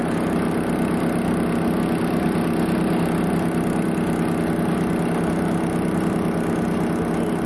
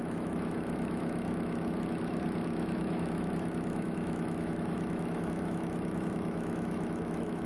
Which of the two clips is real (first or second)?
first